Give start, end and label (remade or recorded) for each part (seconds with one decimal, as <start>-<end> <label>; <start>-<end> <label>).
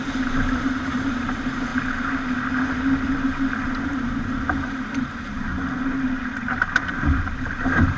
0.0-1.7 remade; 1.7-3.7 recorded; 3.7-5.5 remade; 5.5-6.4 recorded; 6.4-8.0 remade